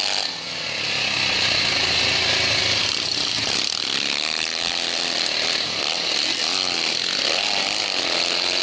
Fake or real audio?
real